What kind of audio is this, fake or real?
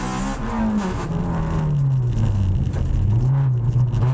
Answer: real